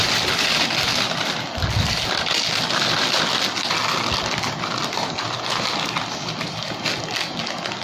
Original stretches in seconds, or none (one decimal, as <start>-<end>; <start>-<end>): 0.0-7.8